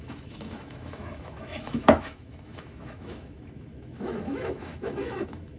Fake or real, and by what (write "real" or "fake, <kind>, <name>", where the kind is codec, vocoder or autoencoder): fake, autoencoder, DAC-VAE